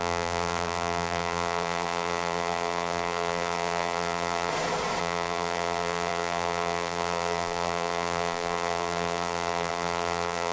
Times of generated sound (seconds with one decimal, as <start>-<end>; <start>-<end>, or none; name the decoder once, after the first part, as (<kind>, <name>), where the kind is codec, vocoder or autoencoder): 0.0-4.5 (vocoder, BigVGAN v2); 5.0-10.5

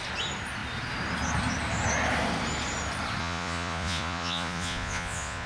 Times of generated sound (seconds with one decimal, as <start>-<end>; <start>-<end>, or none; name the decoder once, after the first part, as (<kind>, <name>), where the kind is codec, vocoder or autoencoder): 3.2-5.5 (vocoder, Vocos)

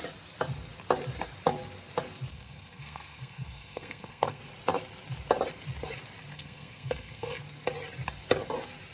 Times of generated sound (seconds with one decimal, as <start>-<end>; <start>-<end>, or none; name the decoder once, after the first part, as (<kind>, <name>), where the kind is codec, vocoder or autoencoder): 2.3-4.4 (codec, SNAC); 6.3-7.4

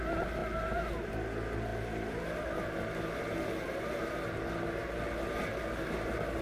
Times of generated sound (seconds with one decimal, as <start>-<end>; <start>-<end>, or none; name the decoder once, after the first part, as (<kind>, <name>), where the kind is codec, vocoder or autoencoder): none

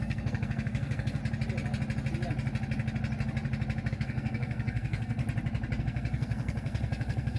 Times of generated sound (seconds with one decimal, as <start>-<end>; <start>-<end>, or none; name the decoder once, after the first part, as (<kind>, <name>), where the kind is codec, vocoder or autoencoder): 0.0-1.2 (codec, SNAC); 3.9-5.2; 5.8-7.4

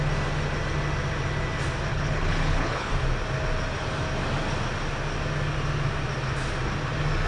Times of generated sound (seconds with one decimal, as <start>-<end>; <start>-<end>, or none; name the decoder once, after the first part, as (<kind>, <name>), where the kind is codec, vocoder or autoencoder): 1.9-2.9 (codec, HILCodec)